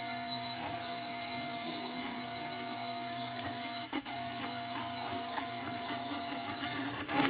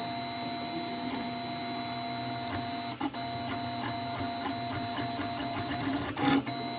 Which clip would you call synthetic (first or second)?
first